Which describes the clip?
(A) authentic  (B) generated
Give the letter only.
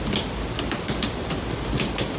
A